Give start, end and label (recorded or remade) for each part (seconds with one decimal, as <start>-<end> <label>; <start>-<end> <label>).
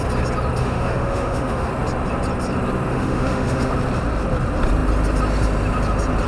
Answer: 0.0-0.6 recorded; 0.6-1.7 remade; 1.7-2.9 recorded; 2.9-3.7 remade; 3.7-6.3 recorded